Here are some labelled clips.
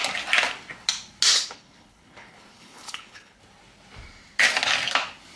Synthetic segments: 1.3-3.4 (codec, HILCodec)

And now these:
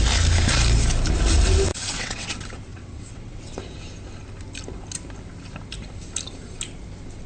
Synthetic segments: 1.7-2.3 (vocoder, WaveNeXt); 2.7-3.4

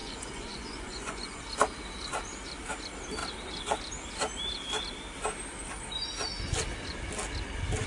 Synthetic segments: 0.0-1.4 (vocoder, Vocos)

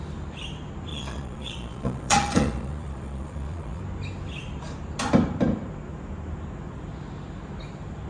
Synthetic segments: 0.9-3.8 (vocoder, Vocos)

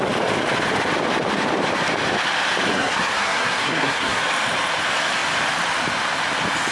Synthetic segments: 2.7-4.2 (codec, SNAC)

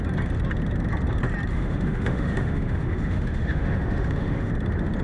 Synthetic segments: 1.5-4.5 (autoencoder, DAC-VAE)